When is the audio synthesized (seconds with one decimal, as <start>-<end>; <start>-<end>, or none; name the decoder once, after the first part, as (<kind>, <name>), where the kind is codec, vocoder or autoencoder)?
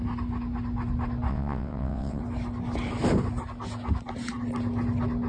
1.3-2.2 (vocoder, WaveNeXt)